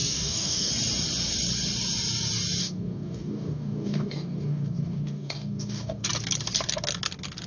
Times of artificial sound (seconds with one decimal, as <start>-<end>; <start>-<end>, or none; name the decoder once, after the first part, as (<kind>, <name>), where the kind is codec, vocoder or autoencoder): 0.0-0.7 (codec, DAC); 2.6-6.1